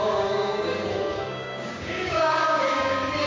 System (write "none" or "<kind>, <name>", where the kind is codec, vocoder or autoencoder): codec, DAC